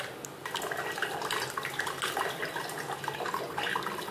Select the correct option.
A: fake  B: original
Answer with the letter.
B